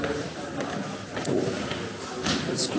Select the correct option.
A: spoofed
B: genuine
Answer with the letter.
B